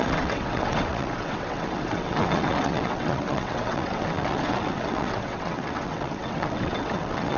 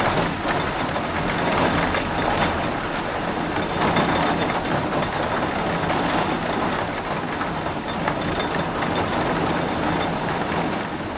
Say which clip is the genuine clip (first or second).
second